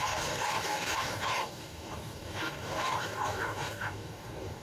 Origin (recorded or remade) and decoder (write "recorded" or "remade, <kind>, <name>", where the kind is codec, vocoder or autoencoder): remade, codec, DAC